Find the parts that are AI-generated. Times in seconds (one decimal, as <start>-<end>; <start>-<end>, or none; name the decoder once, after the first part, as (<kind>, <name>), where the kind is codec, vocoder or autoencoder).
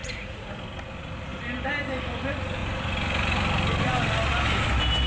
0.0-0.5 (vocoder, Vocos)